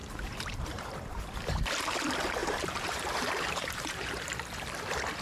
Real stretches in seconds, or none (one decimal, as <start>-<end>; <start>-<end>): 1.2-2.4; 4.3-5.2